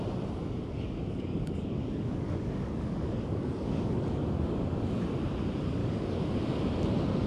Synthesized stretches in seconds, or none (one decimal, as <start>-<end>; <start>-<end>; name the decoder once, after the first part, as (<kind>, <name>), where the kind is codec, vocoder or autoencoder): 0.4-4.8 (codec, DAC); 5.8-6.3